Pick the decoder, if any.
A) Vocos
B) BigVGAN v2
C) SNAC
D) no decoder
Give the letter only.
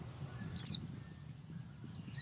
D